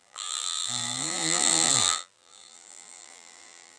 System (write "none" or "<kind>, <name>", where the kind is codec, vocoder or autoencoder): vocoder, BigVGAN v2